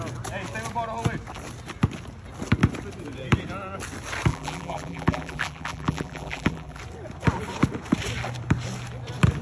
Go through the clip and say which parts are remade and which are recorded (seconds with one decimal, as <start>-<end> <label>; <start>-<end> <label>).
0.0-4.3 recorded; 4.3-6.8 remade; 6.8-9.4 recorded